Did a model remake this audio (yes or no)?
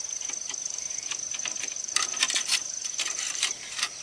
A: yes